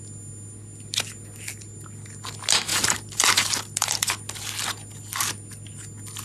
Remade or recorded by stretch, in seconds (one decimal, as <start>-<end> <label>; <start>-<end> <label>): 0.0-2.7 recorded; 2.7-4.1 remade; 4.1-6.2 recorded